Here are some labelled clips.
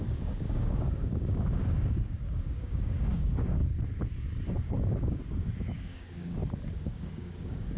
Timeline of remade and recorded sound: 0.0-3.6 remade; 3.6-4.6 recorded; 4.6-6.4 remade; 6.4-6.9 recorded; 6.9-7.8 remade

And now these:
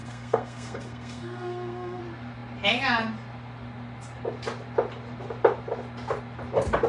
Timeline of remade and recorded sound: 0.0-2.0 remade; 2.0-6.9 recorded

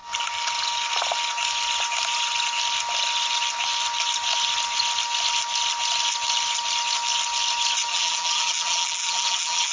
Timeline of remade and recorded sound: 0.0-7.9 recorded; 7.9-9.7 remade